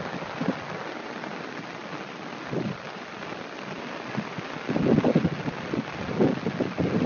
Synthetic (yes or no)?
no